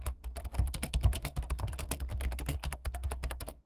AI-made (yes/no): yes